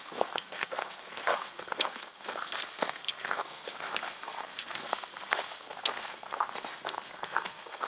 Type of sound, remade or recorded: remade